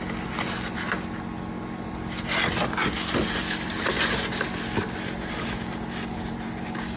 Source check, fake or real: real